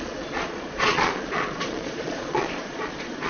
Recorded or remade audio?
remade